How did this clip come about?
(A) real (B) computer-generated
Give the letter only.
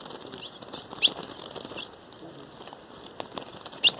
A